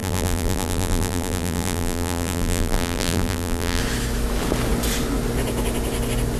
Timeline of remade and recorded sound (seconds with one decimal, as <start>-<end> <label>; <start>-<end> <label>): 0.0-3.8 remade; 3.8-6.4 recorded